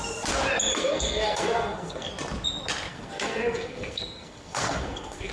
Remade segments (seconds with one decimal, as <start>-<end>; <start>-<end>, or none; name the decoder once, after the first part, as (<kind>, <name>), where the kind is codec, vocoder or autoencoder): 0.7-2.1 (codec, SNAC); 2.9-5.3